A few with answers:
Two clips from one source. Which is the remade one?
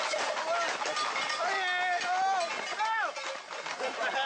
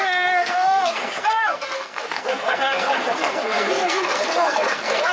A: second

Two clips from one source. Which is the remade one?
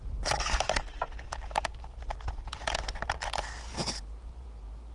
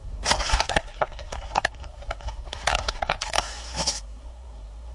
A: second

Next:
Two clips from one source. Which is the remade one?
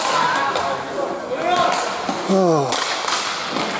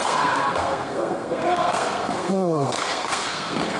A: second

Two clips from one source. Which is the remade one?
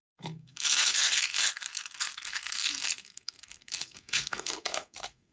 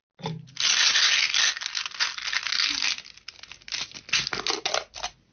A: first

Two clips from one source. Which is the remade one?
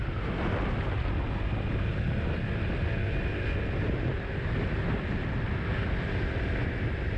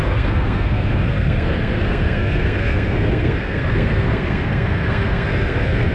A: second